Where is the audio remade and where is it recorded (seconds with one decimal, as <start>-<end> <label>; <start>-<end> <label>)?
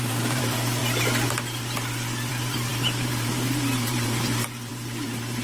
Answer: 0.0-0.8 remade; 0.8-2.3 recorded; 2.3-5.4 remade